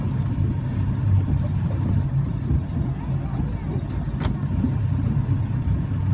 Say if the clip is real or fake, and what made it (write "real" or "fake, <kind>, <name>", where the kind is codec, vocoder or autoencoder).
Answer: real